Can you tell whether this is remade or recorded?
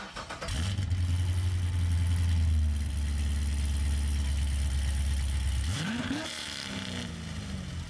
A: recorded